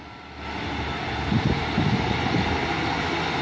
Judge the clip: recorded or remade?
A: recorded